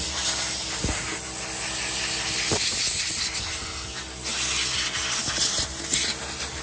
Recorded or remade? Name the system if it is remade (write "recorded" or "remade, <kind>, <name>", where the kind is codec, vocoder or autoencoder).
recorded